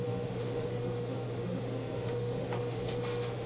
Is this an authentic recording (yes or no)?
no